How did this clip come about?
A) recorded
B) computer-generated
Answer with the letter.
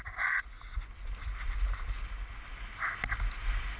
A